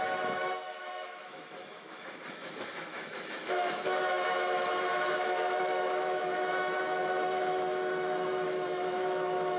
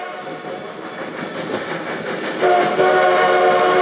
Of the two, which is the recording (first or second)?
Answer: second